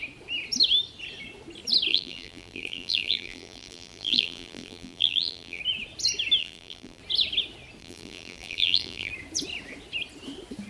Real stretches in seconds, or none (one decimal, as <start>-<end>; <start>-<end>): 0.0-1.9; 5.6-6.4; 7.0-7.8; 9.1-10.7